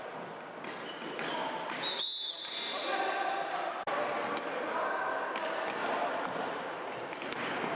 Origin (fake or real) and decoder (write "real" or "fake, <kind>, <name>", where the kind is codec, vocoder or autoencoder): real